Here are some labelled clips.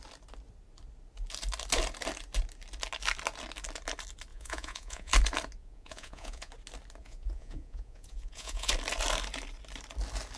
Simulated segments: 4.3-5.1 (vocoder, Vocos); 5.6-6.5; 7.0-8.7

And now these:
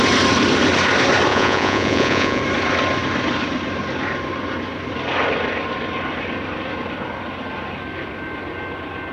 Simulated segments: 1.3-2.4 (vocoder, Vocos)